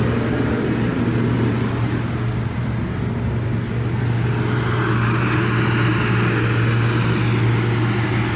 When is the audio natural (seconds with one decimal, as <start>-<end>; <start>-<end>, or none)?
0.0-8.4